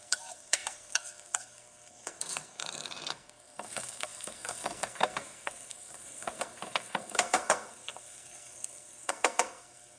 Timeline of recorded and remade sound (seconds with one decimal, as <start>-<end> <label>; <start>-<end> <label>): 0.0-10.0 remade